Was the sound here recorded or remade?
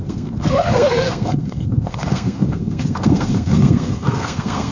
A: remade